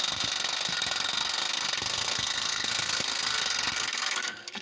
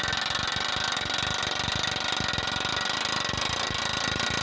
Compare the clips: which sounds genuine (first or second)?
second